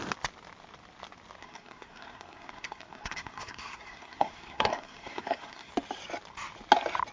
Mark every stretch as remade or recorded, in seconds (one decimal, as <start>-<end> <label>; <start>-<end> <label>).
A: 0.0-1.4 recorded; 1.4-5.7 remade; 5.7-7.1 recorded